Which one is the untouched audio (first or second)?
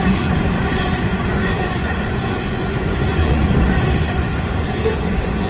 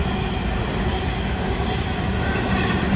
second